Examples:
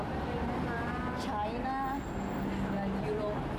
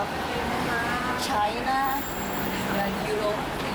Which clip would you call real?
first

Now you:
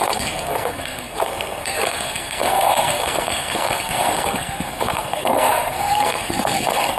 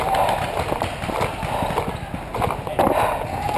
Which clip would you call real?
second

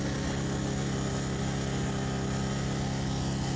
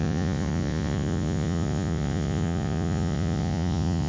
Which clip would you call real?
first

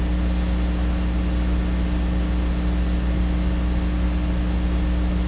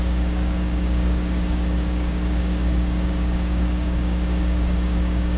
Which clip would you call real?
first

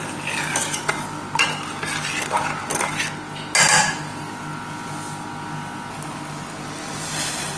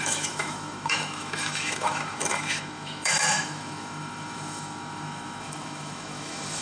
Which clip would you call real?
first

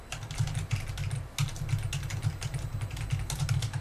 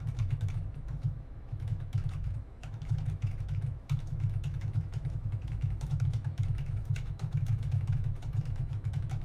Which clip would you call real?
first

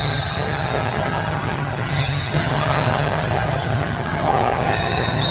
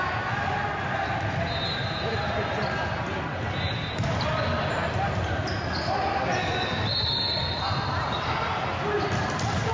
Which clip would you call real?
second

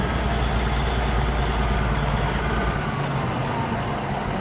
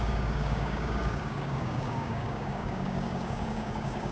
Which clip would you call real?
first